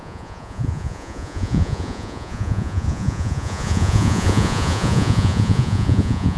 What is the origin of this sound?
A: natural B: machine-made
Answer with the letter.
B